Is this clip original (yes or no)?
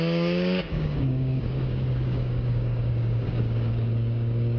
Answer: no